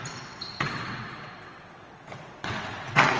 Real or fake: fake